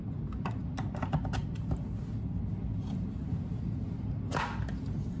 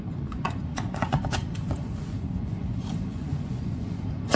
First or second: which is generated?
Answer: second